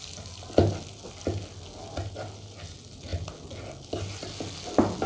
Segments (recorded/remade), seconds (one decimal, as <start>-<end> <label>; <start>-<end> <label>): 0.0-5.1 recorded